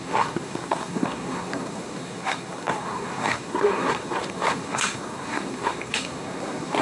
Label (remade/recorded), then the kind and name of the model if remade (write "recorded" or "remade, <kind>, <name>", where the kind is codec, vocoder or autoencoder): remade, codec, SNAC